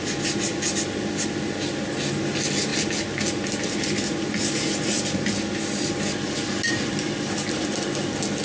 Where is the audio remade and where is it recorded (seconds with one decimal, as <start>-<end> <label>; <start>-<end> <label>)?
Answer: 0.0-8.4 recorded